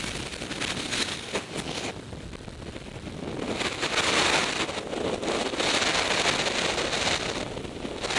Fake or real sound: real